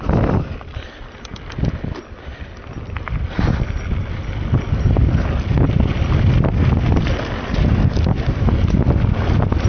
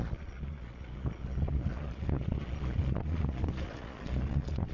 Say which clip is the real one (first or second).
first